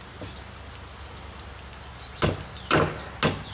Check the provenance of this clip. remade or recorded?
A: recorded